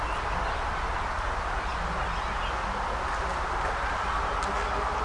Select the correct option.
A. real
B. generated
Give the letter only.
A